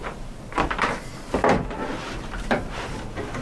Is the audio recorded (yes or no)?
no